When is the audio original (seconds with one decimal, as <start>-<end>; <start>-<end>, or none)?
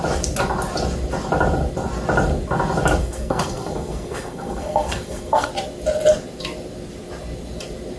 0.0-3.0; 5.5-8.0